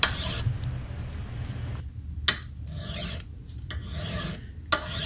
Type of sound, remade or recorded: recorded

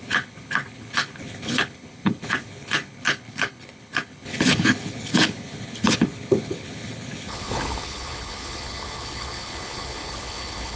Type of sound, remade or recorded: remade